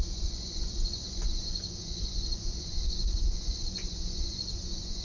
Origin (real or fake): fake